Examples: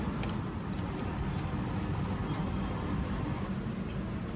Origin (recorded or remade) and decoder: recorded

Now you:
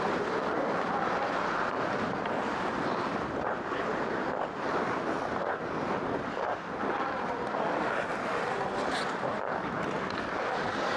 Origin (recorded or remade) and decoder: recorded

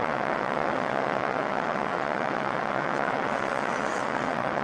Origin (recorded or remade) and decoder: remade, vocoder, WaveNeXt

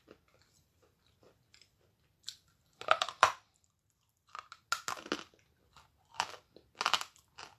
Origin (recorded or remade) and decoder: recorded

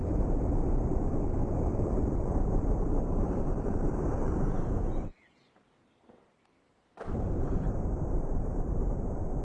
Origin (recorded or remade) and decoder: remade, vocoder, BigVGAN v2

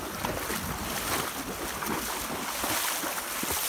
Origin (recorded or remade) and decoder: recorded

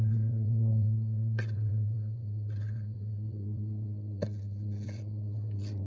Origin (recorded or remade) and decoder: remade, vocoder, WaveNeXt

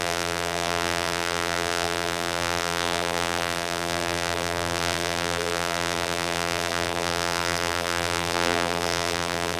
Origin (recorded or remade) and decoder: remade, vocoder, BigVGAN v2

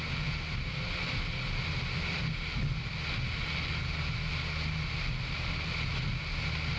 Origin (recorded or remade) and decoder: recorded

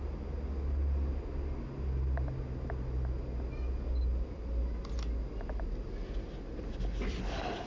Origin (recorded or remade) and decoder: recorded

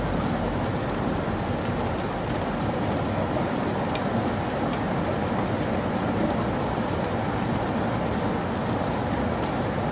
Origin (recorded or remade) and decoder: recorded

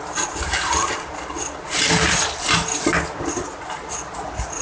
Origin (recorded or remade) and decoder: recorded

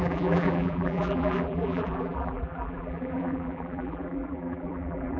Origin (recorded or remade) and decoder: remade, vocoder, BigVGAN v2